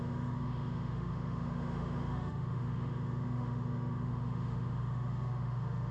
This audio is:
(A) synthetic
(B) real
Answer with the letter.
A